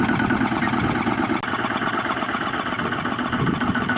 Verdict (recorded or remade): recorded